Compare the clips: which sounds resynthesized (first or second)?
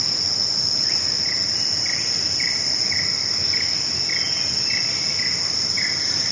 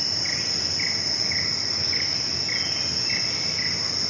first